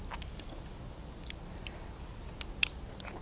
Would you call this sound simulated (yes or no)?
no